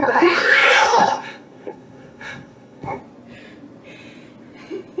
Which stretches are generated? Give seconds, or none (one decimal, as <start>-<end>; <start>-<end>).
0.0-3.0